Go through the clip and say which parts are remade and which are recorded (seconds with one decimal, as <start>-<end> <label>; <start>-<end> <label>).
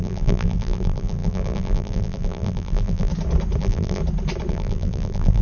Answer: 0.0-3.1 remade; 3.1-3.6 recorded; 3.6-4.0 remade; 4.0-4.5 recorded; 4.5-5.4 remade